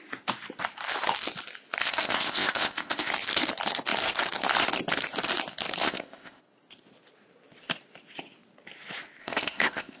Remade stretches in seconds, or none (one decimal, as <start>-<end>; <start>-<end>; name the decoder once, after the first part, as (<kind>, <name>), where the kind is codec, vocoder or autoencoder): 1.8-3.1 (codec, ZipCodec); 5.8-6.4; 9.2-10.0